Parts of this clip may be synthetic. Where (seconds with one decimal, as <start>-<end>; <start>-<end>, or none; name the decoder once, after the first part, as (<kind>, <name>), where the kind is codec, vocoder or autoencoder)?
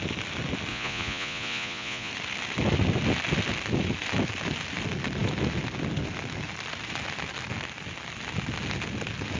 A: 0.7-2.1 (vocoder, Vocos)